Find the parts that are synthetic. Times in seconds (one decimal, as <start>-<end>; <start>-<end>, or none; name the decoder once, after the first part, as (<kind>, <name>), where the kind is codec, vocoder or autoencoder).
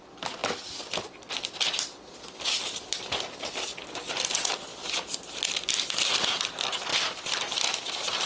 none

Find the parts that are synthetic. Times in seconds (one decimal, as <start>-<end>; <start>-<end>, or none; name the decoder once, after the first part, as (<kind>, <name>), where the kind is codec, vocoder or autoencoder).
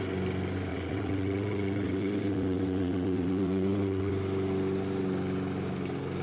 0.7-4.1 (vocoder, WaveNeXt)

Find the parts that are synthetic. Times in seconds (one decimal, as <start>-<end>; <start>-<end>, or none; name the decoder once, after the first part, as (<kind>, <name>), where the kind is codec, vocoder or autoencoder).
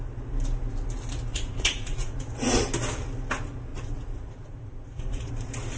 1.3-2.6 (vocoder, Vocos); 3.7-5.3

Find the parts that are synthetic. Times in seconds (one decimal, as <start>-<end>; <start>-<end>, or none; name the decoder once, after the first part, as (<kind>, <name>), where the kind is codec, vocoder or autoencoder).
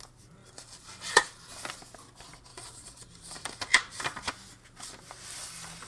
0.4-1.5 (vocoder, BigVGAN v2); 2.5-4.3